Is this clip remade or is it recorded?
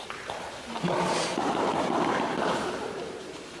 remade